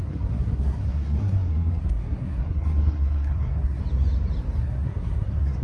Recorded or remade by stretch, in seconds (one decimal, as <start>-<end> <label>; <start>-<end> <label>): 0.0-3.8 remade; 3.8-4.6 recorded; 4.6-5.6 remade